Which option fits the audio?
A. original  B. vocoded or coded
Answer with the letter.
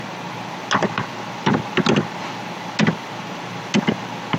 A